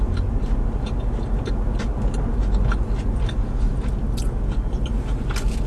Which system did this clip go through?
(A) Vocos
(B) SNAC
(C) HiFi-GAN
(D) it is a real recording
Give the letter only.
D